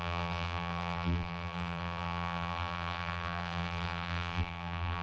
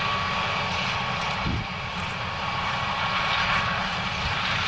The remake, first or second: first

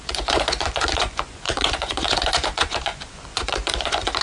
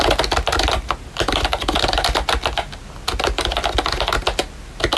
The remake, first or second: first